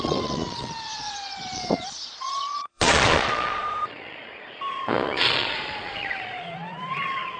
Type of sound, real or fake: fake